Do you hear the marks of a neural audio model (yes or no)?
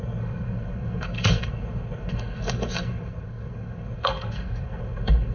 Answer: yes